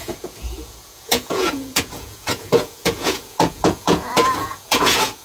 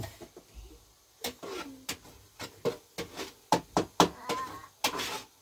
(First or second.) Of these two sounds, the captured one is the second